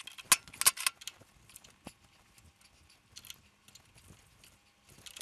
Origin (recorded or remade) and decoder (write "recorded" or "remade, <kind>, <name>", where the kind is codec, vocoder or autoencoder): recorded